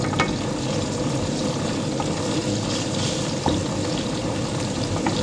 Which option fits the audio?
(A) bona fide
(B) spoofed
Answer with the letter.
A